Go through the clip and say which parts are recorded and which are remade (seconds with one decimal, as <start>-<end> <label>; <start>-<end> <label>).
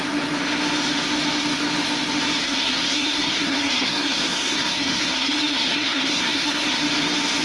0.0-2.4 recorded; 2.4-6.8 remade; 6.8-7.4 recorded